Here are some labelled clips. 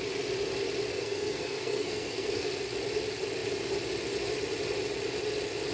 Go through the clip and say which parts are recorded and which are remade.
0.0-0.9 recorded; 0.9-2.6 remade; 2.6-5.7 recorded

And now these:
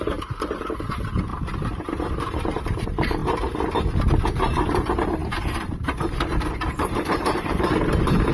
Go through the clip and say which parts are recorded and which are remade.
0.0-1.3 remade; 1.3-2.1 recorded; 2.1-3.2 remade; 3.2-4.1 recorded; 4.1-8.3 remade

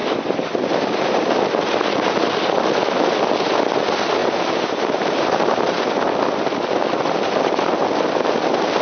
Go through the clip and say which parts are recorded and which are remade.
0.0-1.3 remade; 1.3-4.2 recorded; 4.2-5.8 remade; 5.8-8.8 recorded

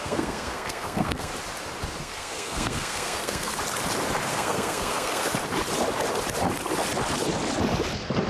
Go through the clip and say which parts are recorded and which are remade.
0.0-1.3 remade; 1.3-2.0 recorded; 2.0-3.5 remade; 3.5-4.3 recorded; 4.3-5.2 remade; 5.2-8.3 recorded

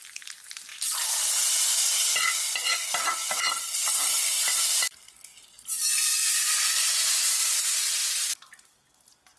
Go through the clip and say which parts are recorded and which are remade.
0.0-9.4 recorded